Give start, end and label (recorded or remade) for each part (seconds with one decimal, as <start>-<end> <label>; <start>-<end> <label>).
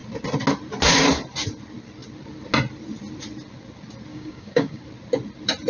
0.0-4.1 recorded; 4.1-4.8 remade; 4.8-5.7 recorded